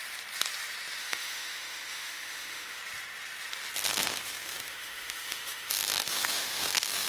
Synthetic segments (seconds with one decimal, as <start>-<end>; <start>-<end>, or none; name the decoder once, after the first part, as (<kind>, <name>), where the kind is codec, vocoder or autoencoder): 1.0-2.8 (autoencoder, DAC-VAE); 3.9-7.1